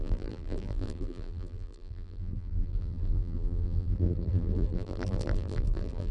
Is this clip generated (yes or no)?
yes